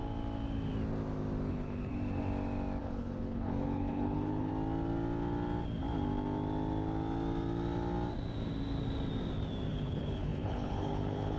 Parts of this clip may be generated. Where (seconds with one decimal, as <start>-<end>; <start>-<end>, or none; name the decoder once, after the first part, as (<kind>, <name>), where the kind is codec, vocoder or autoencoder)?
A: 1.5-1.9 (codec, HILCodec); 2.8-4.5; 9.7-11.4